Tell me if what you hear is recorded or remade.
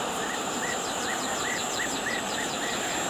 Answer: remade